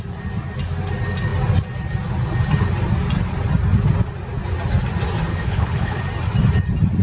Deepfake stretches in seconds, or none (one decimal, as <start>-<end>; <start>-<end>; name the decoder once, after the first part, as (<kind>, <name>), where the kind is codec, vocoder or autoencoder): 5.3-6.0 (codec, HILCodec)

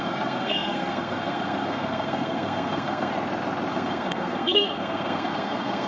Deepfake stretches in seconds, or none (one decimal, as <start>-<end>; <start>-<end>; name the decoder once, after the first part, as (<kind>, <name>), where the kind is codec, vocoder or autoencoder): 0.0-3.1 (codec, SNAC); 3.7-5.9

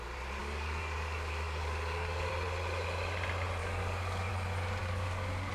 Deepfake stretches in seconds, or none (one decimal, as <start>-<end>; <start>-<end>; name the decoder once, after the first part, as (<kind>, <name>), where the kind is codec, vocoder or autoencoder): 0.4-2.3 (codec, DAC); 3.6-4.3; 4.8-5.5

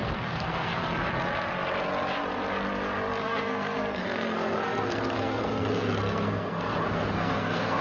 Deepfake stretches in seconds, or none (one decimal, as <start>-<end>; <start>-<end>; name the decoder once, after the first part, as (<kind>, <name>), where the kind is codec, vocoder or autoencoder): 0.0-0.8 (codec, SNAC); 3.2-7.8

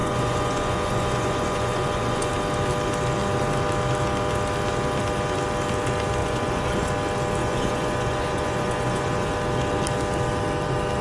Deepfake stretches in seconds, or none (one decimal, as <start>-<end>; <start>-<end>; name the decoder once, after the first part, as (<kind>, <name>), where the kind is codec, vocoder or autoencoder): 0.0-2.3 (vocoder, Vocos); 6.2-6.9; 7.4-9.3

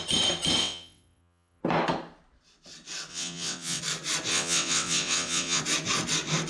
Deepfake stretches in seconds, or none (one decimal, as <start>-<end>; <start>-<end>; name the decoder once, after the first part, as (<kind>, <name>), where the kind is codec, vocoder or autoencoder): 0.6-1.6 (vocoder, WaveNeXt); 3.1-3.8; 4.3-5.6

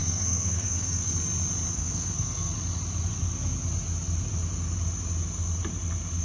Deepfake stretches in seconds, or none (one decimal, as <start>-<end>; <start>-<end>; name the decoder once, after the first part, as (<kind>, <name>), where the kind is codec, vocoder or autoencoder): 0.0-1.1 (codec, SNAC); 1.7-2.5

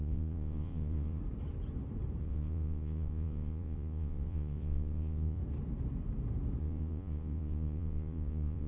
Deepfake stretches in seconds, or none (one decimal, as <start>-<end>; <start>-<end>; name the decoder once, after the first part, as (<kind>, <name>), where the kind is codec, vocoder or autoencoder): 0.0-1.2 (vocoder, Vocos); 2.2-5.4; 6.6-8.7